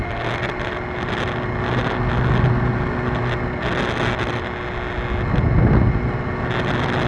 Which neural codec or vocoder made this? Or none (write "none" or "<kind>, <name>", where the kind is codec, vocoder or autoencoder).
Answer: none